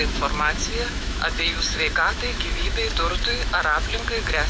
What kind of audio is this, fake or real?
fake